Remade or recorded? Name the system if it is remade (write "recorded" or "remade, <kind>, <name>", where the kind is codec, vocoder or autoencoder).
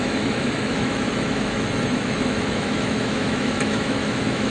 remade, autoencoder, DAC-VAE